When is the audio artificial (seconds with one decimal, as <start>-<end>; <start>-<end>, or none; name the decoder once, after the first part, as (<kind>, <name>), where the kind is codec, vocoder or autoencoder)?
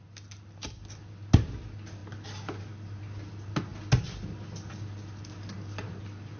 none